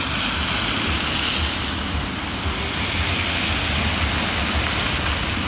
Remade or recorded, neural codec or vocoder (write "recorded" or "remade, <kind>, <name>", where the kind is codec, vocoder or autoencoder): recorded